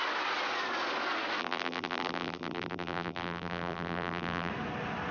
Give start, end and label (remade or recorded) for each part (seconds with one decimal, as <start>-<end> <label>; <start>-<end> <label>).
0.0-1.4 recorded; 1.4-4.5 remade; 4.5-5.1 recorded